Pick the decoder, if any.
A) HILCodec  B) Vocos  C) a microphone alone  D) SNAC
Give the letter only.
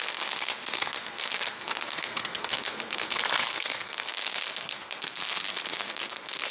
D